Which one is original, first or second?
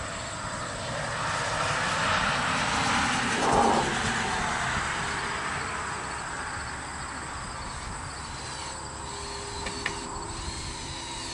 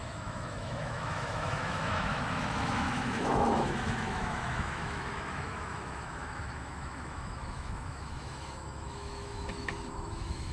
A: first